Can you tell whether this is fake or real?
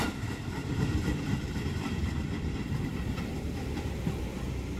fake